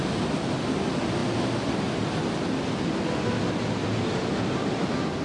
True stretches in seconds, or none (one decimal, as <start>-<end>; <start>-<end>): 0.0-5.2